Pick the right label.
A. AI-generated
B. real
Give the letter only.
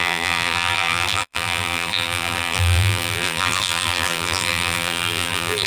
A